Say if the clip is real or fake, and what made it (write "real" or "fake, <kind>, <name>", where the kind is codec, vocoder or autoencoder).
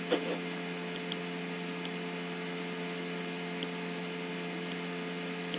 real